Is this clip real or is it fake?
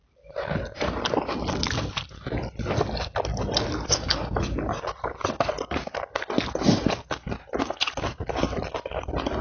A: real